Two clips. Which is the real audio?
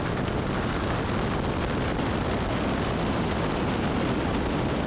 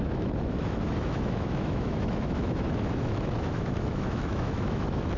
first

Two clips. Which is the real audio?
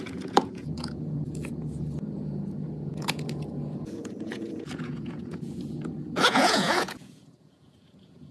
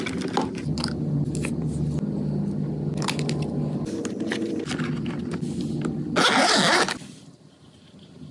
second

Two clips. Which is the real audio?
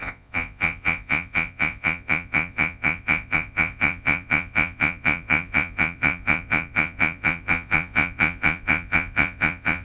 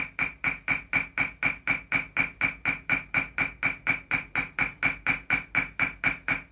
second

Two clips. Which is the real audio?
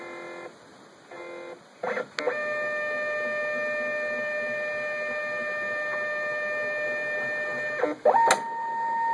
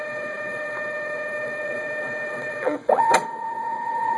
first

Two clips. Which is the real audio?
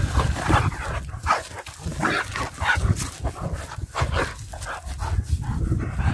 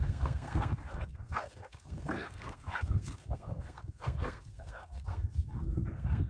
first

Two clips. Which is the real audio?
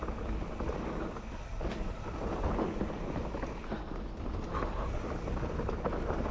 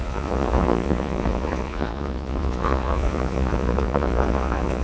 first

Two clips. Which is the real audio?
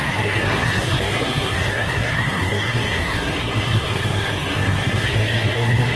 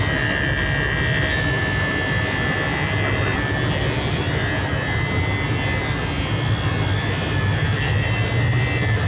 second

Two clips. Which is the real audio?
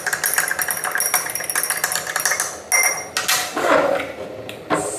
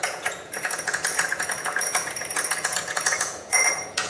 first